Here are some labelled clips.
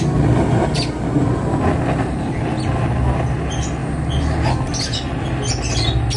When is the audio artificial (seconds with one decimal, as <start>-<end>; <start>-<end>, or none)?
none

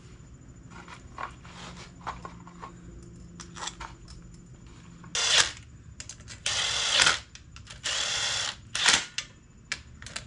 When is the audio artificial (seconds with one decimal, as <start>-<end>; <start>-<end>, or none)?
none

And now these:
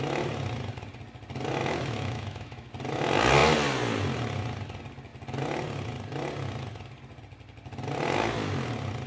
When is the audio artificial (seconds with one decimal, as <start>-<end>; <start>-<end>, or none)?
1.6-2.7